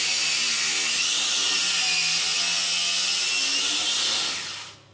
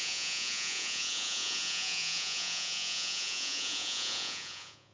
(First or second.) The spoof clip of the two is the second